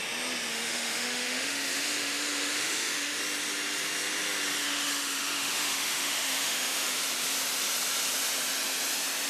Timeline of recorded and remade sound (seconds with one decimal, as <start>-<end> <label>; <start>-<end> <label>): 0.0-0.5 recorded; 0.5-3.2 remade; 3.2-4.6 recorded; 4.6-7.0 remade; 7.0-9.3 recorded